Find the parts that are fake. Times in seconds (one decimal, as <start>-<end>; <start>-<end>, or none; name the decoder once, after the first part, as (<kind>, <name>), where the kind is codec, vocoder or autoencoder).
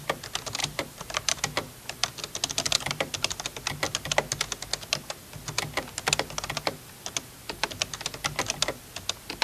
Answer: 0.6-1.4 (vocoder, BigVGAN v2)